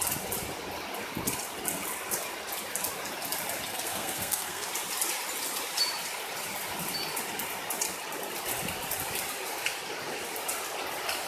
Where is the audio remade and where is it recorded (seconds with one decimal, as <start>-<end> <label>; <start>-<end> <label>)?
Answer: 0.0-3.7 recorded; 3.7-4.7 remade; 4.7-11.3 recorded